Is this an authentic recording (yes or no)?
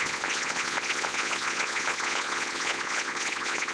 no